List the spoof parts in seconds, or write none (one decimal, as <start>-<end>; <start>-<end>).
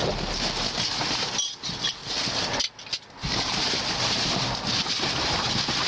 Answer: none